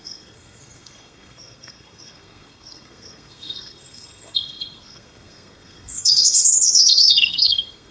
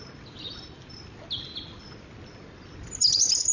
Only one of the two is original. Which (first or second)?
second